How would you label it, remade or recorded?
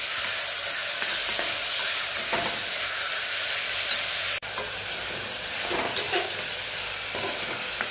recorded